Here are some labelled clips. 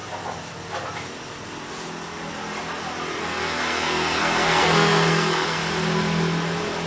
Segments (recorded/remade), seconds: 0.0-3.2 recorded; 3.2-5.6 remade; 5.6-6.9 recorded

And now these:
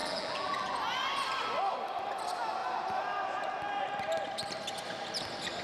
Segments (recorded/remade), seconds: 0.0-0.8 remade; 0.8-5.6 recorded

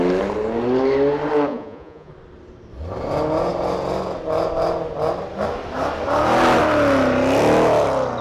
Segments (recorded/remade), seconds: 0.0-1.5 recorded; 1.5-2.1 remade; 2.1-8.2 recorded

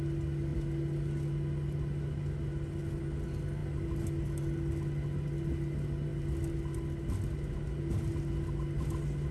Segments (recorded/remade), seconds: 0.0-9.3 recorded

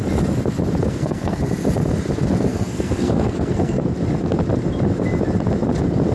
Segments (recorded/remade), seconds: 0.0-0.8 recorded; 0.8-1.4 remade; 1.4-2.5 recorded; 2.5-3.9 remade; 3.9-6.1 recorded